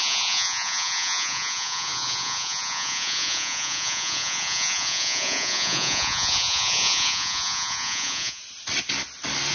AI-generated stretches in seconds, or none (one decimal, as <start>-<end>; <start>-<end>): 0.0-8.4

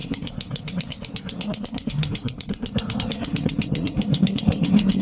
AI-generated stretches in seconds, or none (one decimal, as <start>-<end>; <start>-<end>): 0.0-5.0

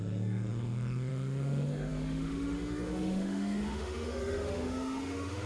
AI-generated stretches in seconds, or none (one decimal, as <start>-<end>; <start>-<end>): 0.0-5.5

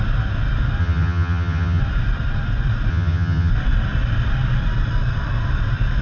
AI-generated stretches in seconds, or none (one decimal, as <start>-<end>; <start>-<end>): 0.8-1.8; 2.9-3.5

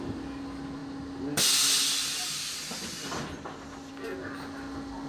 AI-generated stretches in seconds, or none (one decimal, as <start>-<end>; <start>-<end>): none